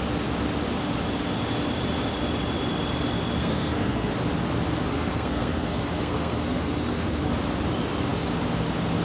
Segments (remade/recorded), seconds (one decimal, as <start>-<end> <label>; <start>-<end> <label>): 0.0-3.4 recorded; 3.4-4.1 remade; 4.1-4.9 recorded; 4.9-7.3 remade; 7.3-9.0 recorded